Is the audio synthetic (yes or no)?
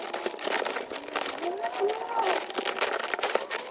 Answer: no